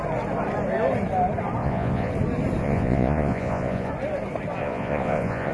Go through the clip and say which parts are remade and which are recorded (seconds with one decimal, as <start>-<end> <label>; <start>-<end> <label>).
0.0-1.6 recorded; 1.6-2.1 remade; 2.1-2.6 recorded; 2.6-3.9 remade; 3.9-4.6 recorded; 4.6-5.5 remade